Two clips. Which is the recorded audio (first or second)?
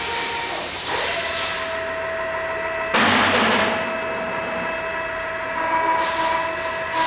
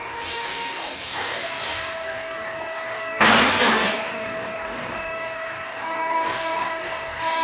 first